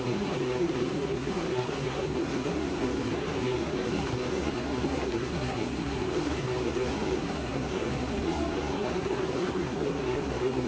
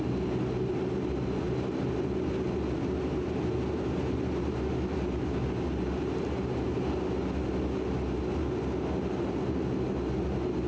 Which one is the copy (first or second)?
first